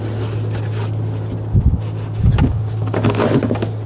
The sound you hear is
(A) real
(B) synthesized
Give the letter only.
A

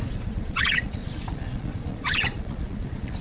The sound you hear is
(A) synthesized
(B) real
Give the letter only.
A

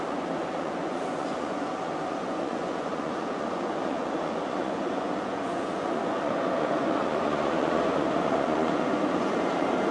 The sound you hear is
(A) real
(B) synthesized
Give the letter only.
B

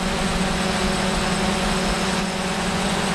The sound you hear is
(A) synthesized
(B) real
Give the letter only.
A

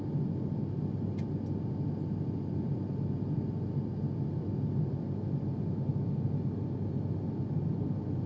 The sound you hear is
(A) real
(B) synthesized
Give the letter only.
A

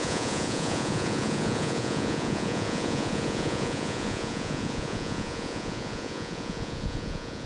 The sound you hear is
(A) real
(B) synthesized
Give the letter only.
B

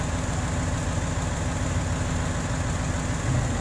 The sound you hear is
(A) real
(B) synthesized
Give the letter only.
A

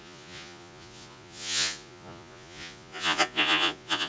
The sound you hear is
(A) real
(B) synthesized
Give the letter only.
B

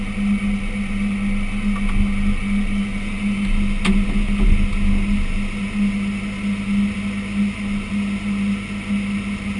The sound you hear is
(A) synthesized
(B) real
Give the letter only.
B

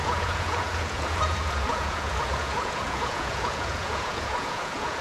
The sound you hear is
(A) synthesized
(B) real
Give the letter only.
A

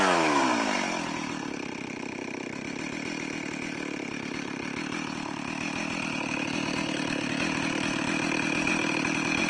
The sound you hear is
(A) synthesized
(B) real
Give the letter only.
B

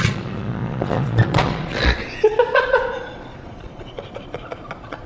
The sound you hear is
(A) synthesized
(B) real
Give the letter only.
A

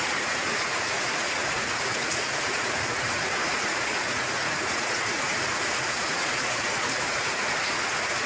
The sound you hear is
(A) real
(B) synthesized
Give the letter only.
B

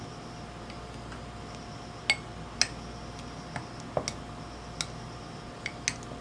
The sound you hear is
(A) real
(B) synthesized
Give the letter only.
A